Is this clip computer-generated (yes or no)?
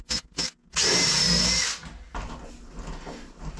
no